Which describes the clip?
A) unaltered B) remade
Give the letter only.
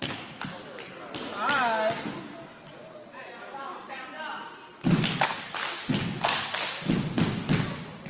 A